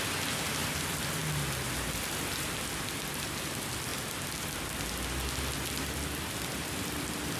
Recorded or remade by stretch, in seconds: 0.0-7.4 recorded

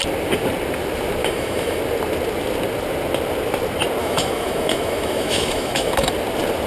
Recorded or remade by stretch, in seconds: 0.0-1.2 recorded; 1.2-1.8 remade; 1.8-4.0 recorded; 4.0-6.1 remade; 6.1-6.7 recorded

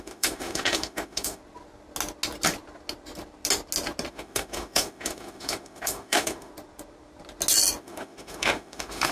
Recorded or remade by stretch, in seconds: 0.0-1.4 remade; 1.4-4.1 recorded; 4.1-6.5 remade; 6.5-7.8 recorded; 7.8-9.1 remade

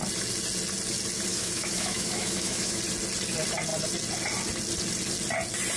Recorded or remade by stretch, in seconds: 0.0-1.3 recorded; 1.3-2.8 remade; 2.8-5.8 recorded

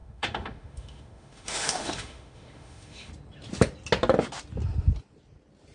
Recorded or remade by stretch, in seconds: 0.0-3.1 remade; 3.1-5.7 recorded

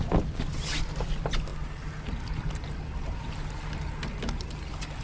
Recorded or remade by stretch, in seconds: 0.0-5.0 recorded